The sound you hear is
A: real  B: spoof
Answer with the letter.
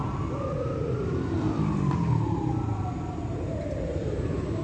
A